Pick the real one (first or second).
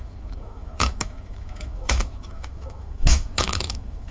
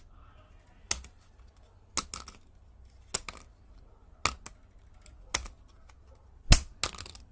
second